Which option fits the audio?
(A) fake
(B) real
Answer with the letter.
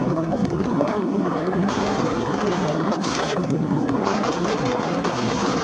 A